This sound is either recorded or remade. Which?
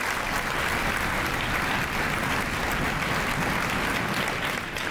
recorded